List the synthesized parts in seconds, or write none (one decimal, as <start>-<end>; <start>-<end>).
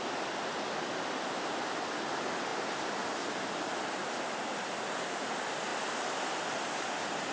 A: none